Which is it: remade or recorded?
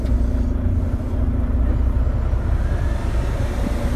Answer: recorded